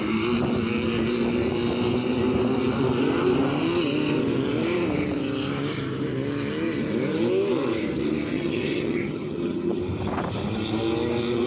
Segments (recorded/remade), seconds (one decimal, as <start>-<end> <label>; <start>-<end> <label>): 0.0-8.3 recorded; 8.3-9.8 remade; 9.8-11.5 recorded